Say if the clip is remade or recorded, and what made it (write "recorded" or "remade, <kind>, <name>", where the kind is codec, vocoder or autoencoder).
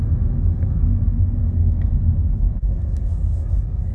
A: remade, codec, SNAC